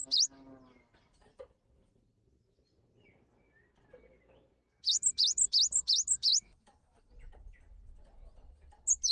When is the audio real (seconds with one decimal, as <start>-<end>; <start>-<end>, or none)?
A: 0.0-6.3; 7.1-9.1